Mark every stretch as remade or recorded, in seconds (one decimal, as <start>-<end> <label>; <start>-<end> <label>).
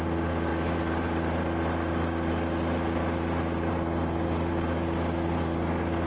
0.0-6.1 recorded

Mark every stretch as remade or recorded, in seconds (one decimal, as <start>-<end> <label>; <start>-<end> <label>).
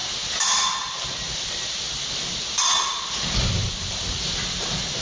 0.0-5.0 recorded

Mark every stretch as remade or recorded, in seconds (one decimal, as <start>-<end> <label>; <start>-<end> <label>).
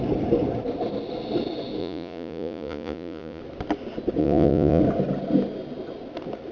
0.0-1.8 recorded; 1.8-3.4 remade; 3.4-4.2 recorded; 4.2-4.8 remade; 4.8-6.5 recorded